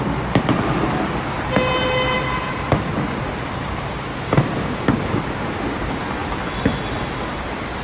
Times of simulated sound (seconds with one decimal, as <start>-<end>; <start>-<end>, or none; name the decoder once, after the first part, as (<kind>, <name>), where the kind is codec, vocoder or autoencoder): 4.1-5.2 (codec, DAC)